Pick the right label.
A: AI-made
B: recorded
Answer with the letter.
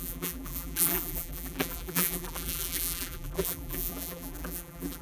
A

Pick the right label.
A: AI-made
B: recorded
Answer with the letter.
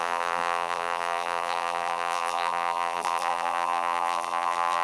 A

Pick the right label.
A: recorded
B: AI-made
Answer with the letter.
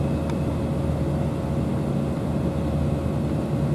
A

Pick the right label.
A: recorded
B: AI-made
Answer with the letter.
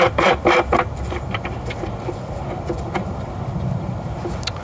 A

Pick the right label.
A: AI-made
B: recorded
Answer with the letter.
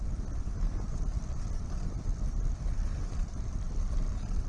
B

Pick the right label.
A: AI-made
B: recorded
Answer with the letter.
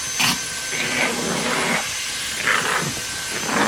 A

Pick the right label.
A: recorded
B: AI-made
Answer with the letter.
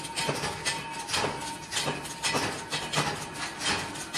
A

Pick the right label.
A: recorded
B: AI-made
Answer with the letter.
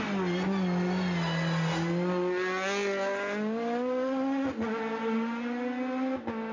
A